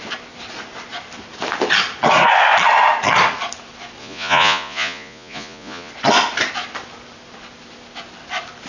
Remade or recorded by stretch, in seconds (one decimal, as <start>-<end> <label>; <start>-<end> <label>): 0.0-4.0 recorded; 4.0-5.9 remade; 5.9-8.7 recorded